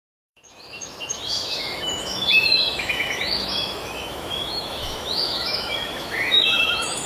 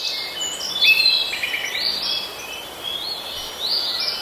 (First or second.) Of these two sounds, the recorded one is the second